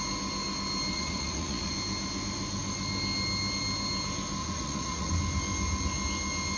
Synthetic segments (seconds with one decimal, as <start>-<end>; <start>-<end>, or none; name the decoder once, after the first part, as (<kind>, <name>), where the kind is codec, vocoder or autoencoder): 0.9-1.7 (vocoder, Vocos); 4.4-5.1

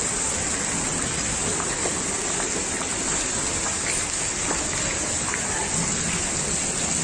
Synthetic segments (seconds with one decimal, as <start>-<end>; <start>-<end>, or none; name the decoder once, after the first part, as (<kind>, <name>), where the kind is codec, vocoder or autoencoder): none

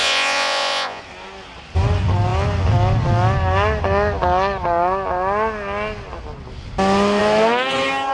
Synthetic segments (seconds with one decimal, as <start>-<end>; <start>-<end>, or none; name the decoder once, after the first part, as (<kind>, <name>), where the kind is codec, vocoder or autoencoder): 0.0-1.0 (vocoder, Vocos)

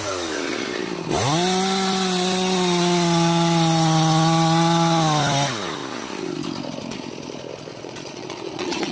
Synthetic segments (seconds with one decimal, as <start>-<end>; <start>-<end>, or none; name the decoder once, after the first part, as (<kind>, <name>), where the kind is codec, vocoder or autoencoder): 7.7-8.9 (vocoder, Vocos)